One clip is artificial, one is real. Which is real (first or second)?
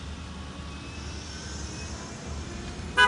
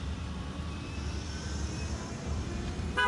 first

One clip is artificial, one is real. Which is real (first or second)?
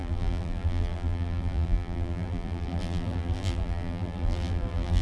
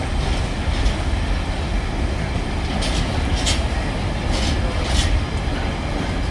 second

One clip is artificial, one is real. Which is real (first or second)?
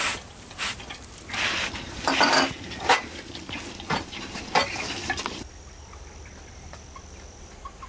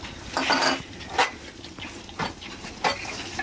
second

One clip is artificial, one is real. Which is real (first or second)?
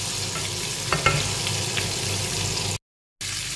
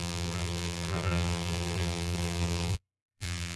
first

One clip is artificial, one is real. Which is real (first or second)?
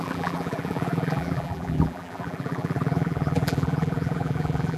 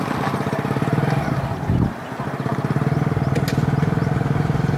second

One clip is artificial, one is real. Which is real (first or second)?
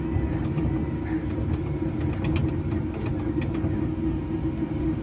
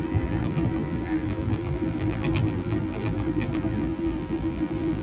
first